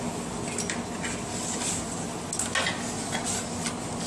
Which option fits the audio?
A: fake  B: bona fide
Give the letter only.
B